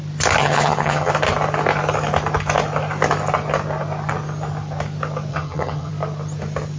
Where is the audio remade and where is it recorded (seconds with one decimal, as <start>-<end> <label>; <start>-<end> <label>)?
0.0-0.4 recorded; 0.4-1.1 remade; 1.1-5.3 recorded; 5.3-5.9 remade; 5.9-6.8 recorded